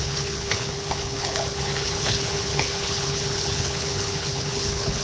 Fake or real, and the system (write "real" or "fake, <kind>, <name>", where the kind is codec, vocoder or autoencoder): fake, codec, HILCodec